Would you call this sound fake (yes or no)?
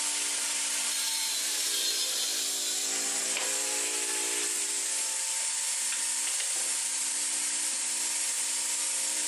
yes